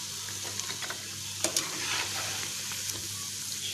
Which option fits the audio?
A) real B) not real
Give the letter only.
A